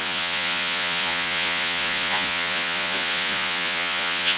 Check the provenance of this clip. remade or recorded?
remade